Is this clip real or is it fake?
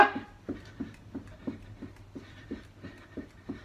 real